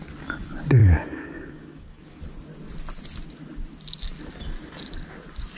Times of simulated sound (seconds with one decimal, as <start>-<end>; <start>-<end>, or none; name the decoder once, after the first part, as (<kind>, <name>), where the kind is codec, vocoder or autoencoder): 0.8-2.2 (codec, DAC)